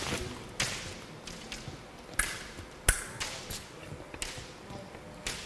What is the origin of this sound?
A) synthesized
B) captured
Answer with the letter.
B